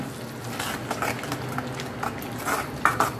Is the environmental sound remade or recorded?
recorded